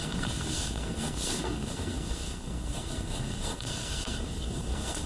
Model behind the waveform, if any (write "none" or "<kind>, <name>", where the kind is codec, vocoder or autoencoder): codec, SNAC